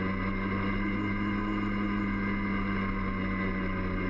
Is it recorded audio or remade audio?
recorded